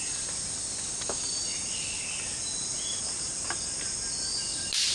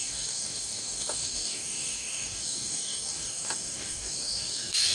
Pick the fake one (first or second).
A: second